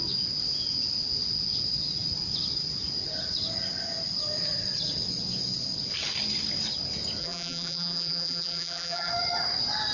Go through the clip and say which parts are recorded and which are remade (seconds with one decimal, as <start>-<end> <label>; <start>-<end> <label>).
0.0-7.2 recorded; 7.2-9.1 remade; 9.1-9.9 recorded